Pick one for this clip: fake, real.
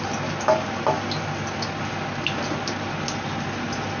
real